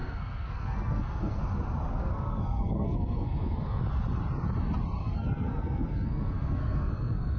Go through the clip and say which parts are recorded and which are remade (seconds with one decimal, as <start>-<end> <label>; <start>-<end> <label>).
0.0-1.4 remade; 1.4-1.9 recorded; 1.9-3.8 remade; 3.8-5.0 recorded; 5.0-7.4 remade